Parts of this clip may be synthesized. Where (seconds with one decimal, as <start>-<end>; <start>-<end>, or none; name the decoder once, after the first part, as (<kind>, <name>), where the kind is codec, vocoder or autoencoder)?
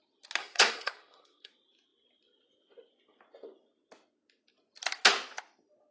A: 0.4-1.5 (codec, SNAC)